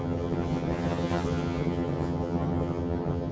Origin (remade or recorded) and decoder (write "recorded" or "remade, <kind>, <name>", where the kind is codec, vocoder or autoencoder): remade, vocoder, HiFi-GAN